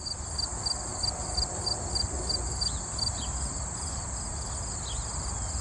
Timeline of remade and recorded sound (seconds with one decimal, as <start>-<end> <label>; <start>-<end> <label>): 0.0-5.6 recorded